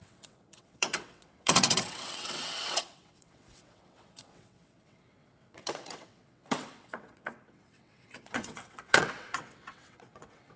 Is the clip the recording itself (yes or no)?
no